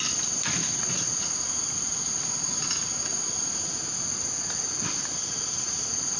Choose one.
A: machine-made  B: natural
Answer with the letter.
B